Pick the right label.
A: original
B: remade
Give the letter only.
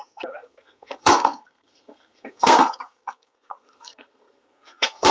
B